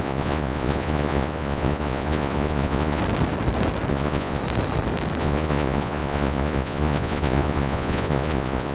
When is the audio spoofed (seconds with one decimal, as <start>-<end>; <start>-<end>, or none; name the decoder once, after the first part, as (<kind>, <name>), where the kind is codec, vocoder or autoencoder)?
0.0-3.0 (vocoder, Vocos); 3.9-4.4; 5.2-8.7